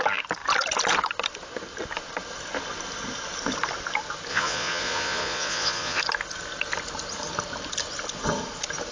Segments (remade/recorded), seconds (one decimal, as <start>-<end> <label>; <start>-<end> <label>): 0.0-4.3 recorded; 4.3-6.0 remade; 6.0-8.9 recorded